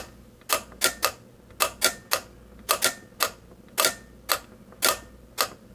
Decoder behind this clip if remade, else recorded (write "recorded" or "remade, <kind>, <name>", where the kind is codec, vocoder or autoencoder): recorded